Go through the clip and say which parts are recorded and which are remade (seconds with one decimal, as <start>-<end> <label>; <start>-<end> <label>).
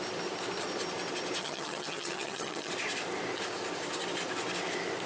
0.0-1.4 recorded; 1.4-2.7 remade; 2.7-5.1 recorded